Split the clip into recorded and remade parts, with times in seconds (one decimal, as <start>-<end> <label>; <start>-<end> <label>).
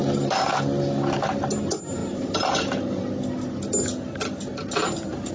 0.0-5.3 recorded